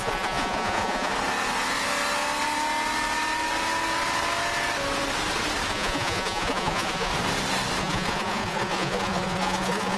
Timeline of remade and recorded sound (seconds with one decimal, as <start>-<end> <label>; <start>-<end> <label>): 0.0-1.1 remade; 1.1-5.7 recorded; 5.7-7.1 remade; 7.1-7.8 recorded; 7.8-10.0 remade